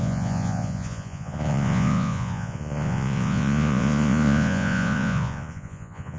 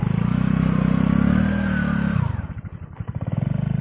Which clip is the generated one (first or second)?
first